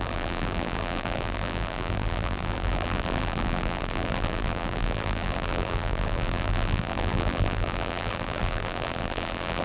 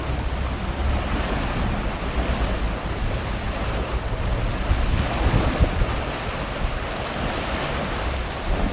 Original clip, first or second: second